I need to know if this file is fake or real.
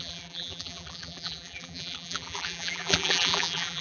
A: fake